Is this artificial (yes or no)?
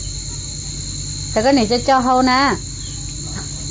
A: no